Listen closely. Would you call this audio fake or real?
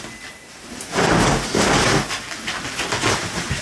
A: real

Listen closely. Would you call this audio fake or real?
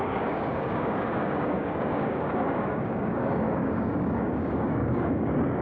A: fake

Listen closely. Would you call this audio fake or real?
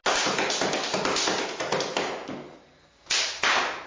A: real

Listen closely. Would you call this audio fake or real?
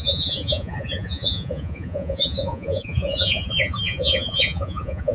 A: fake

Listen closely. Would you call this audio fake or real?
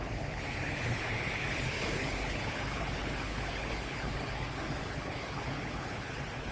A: fake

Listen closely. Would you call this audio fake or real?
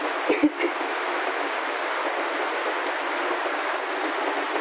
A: real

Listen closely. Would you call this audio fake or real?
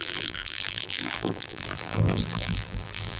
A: fake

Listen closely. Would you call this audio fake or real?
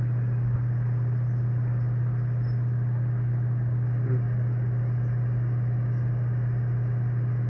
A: real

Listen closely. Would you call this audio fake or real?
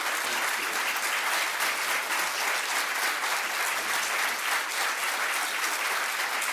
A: real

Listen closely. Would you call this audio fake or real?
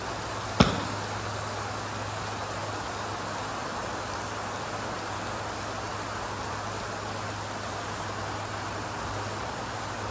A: real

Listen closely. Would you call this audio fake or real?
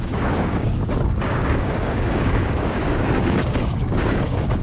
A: fake